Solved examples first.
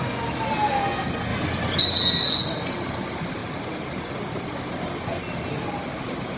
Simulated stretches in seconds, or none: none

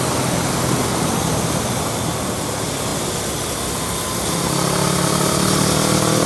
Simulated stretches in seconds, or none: none

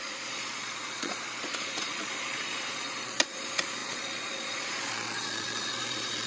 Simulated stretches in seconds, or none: 0.0-6.3 (vocoder, Vocos)